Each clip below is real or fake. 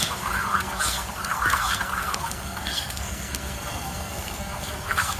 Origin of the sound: fake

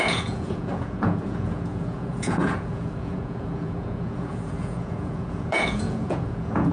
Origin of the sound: fake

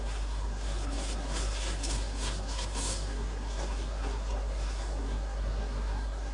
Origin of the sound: fake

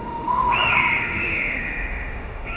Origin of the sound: fake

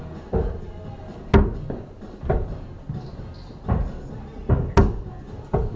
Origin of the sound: real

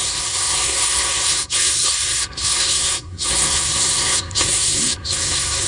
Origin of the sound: fake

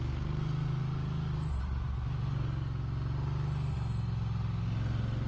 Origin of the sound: real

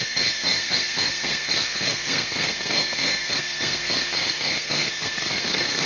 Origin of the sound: fake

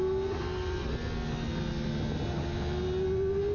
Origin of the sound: real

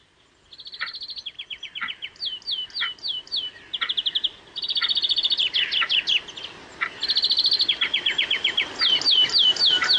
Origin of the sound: real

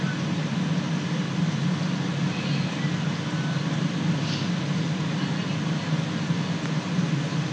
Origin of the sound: real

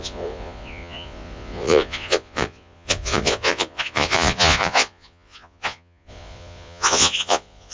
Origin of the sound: fake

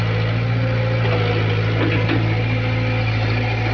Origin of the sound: real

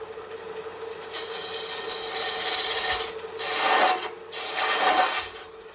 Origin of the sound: real